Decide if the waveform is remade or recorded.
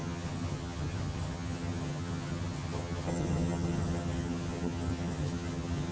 remade